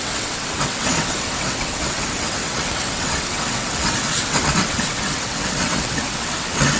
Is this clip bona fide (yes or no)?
no